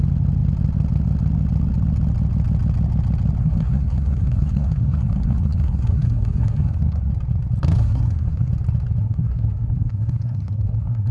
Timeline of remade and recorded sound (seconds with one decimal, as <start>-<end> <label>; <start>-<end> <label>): 0.0-3.4 recorded; 3.4-7.1 remade; 7.1-7.8 recorded; 7.8-8.5 remade; 8.5-9.0 recorded; 9.0-11.1 remade